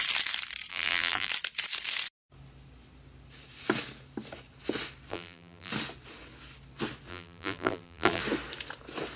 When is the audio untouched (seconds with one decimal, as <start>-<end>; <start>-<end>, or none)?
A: 0.0-0.7; 1.3-5.1; 5.7-7.1; 8.2-9.2